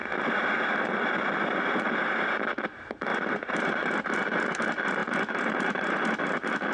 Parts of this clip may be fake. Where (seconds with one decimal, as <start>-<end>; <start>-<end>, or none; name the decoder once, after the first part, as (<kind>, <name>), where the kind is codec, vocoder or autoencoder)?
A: 3.1-4.0 (vocoder, BigVGAN v2); 5.0-6.2